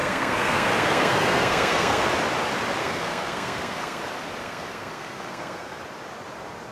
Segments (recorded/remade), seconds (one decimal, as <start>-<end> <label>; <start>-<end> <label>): 0.0-2.1 remade; 2.1-2.8 recorded; 2.8-4.0 remade; 4.0-4.4 recorded; 4.4-5.8 remade; 5.8-6.7 recorded